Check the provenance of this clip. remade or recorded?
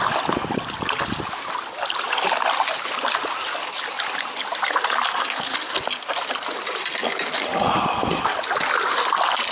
recorded